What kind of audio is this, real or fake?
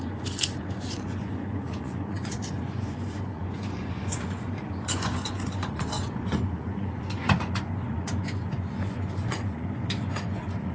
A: fake